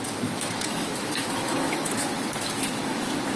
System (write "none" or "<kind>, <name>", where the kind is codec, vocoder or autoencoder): autoencoder, DAC-VAE